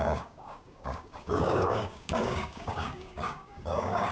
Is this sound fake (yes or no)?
yes